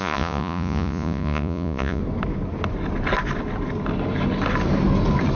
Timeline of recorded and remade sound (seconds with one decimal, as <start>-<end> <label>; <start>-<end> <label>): 0.0-2.0 remade; 2.0-5.4 recorded